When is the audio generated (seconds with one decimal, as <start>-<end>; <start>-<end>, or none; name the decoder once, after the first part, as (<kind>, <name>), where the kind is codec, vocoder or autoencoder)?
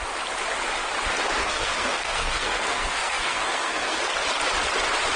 1.4-4.0 (codec, SNAC)